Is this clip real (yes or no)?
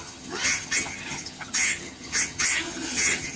no